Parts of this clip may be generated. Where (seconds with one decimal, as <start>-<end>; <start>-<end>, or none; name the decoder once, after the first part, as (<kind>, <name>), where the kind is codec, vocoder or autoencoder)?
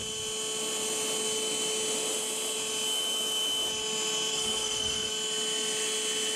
4.3-5.1 (codec, SNAC)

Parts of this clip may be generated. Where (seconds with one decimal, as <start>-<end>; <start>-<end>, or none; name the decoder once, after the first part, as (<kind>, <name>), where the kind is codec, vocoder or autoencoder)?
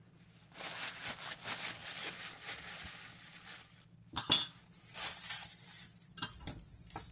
none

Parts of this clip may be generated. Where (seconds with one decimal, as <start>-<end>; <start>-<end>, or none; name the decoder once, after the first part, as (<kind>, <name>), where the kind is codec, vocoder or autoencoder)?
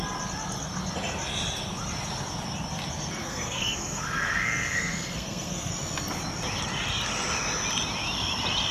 3.2-5.7 (codec, SNAC)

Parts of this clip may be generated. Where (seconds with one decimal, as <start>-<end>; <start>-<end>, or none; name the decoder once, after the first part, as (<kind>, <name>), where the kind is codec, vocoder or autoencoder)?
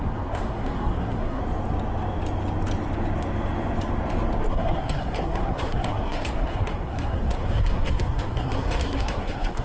0.0-1.4 (codec, SNAC); 4.5-9.6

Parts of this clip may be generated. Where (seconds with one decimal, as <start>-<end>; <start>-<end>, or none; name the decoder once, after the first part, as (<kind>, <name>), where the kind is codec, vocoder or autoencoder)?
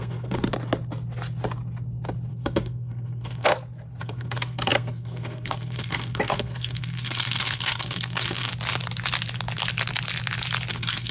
0.0-0.5 (codec, SNAC); 2.3-3.5; 4.0-8.5; 10.7-11.1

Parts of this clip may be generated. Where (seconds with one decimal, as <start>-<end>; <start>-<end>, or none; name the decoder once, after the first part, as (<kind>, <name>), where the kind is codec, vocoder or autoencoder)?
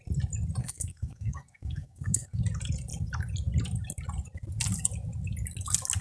0.6-2.4 (codec, SNAC)